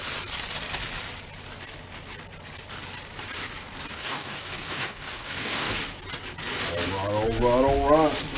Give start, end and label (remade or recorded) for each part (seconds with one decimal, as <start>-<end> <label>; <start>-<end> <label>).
0.0-3.9 recorded; 3.9-5.7 remade; 5.7-8.4 recorded